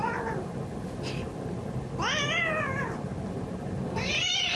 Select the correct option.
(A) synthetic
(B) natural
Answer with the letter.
B